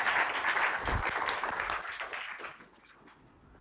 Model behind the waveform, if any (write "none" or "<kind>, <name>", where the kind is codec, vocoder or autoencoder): none